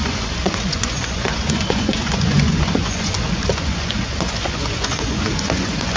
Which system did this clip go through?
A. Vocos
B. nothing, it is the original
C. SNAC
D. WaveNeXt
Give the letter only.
A